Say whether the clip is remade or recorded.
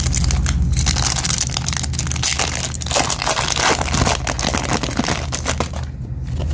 recorded